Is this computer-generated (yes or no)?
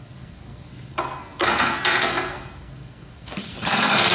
yes